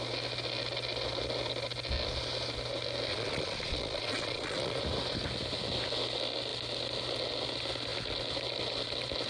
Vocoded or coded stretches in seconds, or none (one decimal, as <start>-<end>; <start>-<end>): 3.1-4.8